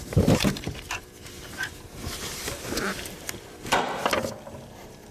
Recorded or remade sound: remade